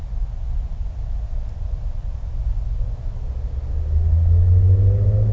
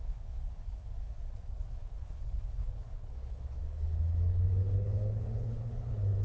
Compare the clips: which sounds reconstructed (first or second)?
second